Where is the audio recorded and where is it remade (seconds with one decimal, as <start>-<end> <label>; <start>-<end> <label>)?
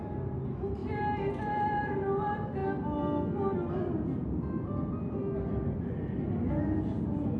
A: 0.0-7.4 recorded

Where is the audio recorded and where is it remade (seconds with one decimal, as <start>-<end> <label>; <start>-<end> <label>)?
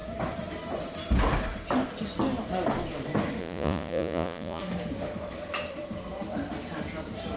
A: 0.0-3.4 recorded; 3.4-4.6 remade; 4.6-7.4 recorded